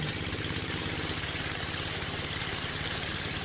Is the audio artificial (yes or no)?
yes